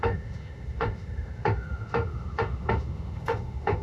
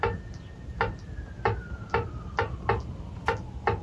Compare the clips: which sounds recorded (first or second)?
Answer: second